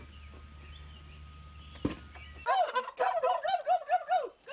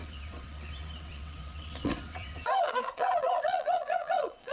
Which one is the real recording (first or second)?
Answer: first